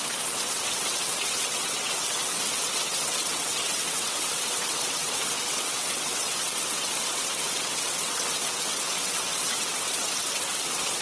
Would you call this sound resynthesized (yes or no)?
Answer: yes